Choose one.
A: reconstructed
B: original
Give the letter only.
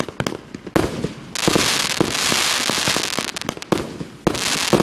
B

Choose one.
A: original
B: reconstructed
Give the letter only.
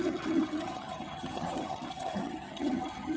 B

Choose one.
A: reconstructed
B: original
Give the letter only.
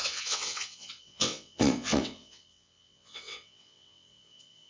A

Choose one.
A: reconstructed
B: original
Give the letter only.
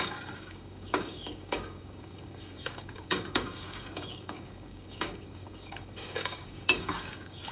A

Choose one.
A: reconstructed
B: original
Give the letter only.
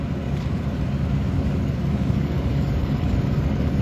A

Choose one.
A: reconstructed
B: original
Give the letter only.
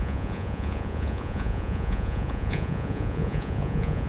A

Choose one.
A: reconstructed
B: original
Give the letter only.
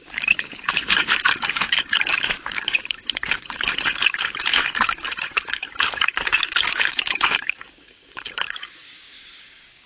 A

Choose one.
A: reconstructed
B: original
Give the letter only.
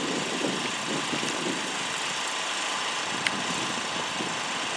B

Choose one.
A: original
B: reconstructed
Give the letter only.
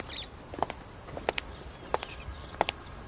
A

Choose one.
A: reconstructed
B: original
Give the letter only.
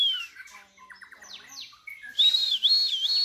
B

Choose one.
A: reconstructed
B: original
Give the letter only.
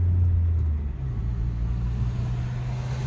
B